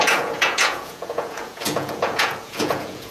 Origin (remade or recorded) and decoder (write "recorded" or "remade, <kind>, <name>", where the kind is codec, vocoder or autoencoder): remade, vocoder, Vocos